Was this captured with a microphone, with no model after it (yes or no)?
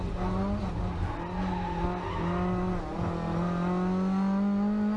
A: yes